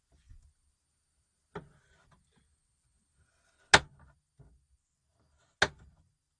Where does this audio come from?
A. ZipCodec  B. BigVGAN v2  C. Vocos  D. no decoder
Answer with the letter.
D